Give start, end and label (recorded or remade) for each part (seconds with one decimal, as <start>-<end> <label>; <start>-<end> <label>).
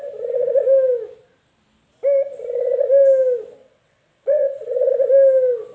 0.0-3.6 recorded; 3.6-4.9 remade; 4.9-5.7 recorded